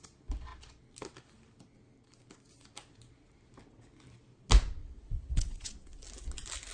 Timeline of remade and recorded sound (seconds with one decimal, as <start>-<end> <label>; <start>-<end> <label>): 0.0-4.8 recorded; 4.8-5.7 remade; 5.7-6.7 recorded

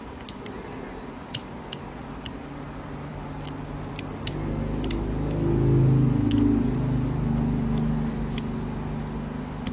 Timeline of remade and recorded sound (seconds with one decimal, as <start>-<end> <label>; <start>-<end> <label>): 0.0-9.7 recorded

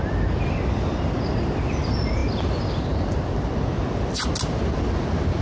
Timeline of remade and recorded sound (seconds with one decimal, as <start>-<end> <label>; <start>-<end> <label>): 0.0-5.4 recorded